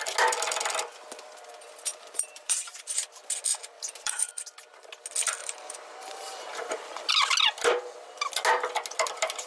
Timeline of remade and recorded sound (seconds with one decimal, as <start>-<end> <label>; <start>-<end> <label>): 0.0-1.9 recorded; 1.9-2.8 remade; 2.8-3.5 recorded; 3.5-4.3 remade; 4.3-5.4 recorded; 5.4-7.1 remade; 7.1-9.5 recorded